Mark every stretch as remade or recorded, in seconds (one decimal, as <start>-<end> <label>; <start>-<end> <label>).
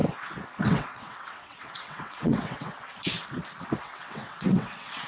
0.0-0.6 recorded; 0.6-2.9 remade; 2.9-3.8 recorded; 3.8-5.1 remade